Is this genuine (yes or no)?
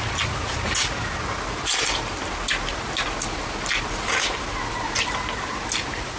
yes